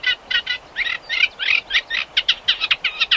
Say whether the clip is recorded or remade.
recorded